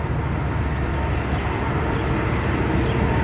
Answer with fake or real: real